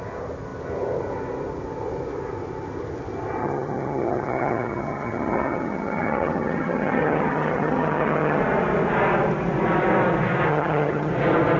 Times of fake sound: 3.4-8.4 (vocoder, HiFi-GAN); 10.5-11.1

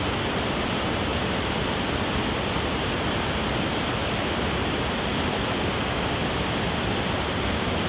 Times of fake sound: none

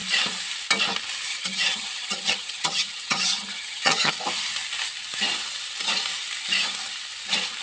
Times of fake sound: 1.3-4.1 (vocoder, HiFi-GAN)

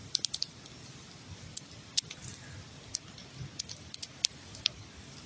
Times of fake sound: none

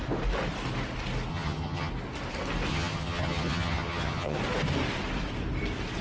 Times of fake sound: 1.3-1.9 (vocoder, HiFi-GAN); 2.7-4.4

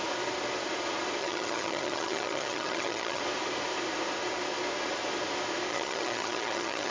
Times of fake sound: 1.2-3.2 (vocoder, HiFi-GAN); 5.7-6.9

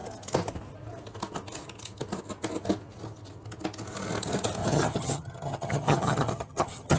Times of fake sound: 4.6-7.0 (vocoder, HiFi-GAN)